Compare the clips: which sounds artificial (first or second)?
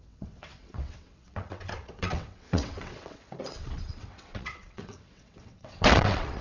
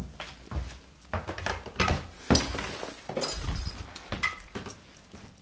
first